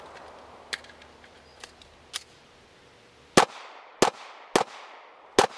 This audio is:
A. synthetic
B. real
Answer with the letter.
B